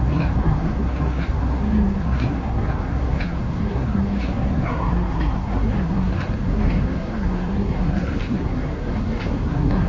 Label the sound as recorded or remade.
remade